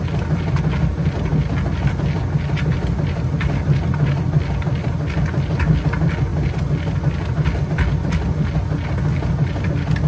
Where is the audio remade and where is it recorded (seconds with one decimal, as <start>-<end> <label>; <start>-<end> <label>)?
0.0-10.1 recorded